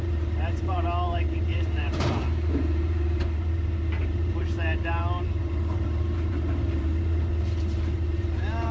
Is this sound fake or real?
fake